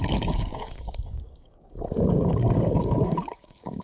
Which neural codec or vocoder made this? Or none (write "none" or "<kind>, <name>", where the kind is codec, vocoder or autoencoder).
codec, DAC